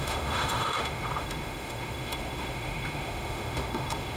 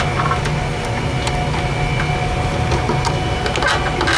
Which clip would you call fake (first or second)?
first